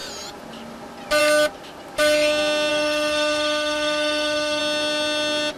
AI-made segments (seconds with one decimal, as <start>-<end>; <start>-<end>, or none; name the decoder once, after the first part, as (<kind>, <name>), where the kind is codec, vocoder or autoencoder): 2.7-4.6 (codec, SNAC)